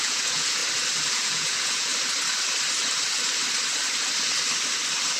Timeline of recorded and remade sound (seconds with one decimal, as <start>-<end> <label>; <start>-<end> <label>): 0.0-0.6 remade; 0.6-1.1 recorded; 1.1-1.9 remade; 1.9-5.2 recorded